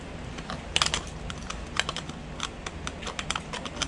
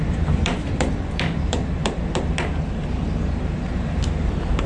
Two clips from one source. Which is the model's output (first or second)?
second